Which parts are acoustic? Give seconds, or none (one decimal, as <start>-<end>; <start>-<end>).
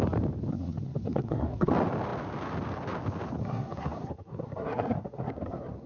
0.0-0.5; 1.7-3.4